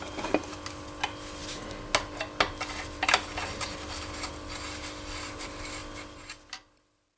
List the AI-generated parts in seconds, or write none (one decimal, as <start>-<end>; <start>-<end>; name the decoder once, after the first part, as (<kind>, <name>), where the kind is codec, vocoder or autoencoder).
none